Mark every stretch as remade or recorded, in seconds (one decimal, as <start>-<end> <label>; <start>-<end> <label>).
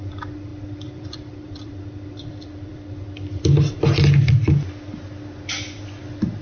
0.0-0.5 recorded; 0.5-3.8 remade; 3.8-6.4 recorded